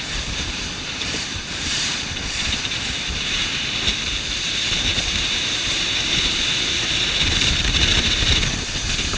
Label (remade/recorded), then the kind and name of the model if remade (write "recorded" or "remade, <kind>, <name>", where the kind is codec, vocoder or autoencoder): remade, vocoder, BigVGAN v2